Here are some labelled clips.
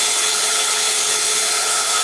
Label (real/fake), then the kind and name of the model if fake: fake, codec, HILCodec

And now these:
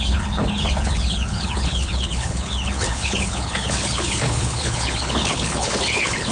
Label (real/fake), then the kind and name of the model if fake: fake, codec, HILCodec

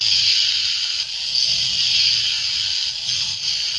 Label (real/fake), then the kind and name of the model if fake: real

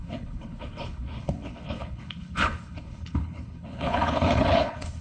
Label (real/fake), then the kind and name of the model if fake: fake, codec, HILCodec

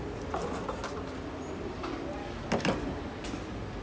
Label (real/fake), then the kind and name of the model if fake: real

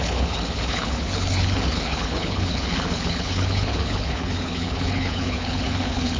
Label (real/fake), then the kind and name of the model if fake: fake, codec, HILCodec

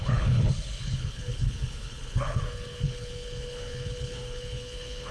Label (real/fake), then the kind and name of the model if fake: fake, codec, HILCodec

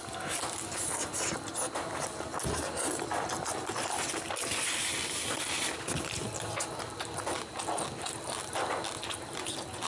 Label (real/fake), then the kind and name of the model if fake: real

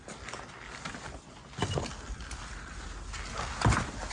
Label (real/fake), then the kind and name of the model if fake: real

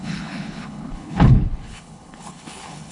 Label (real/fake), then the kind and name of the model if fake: fake, codec, HILCodec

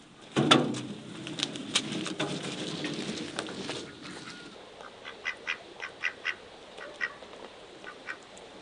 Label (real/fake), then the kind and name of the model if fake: real